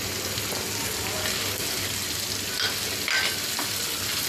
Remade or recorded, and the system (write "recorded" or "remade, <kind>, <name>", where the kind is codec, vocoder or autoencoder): recorded